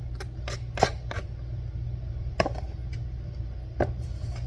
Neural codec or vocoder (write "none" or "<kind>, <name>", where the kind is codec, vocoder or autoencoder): none